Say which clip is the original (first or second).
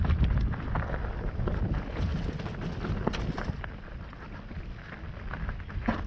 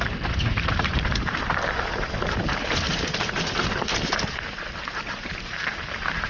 first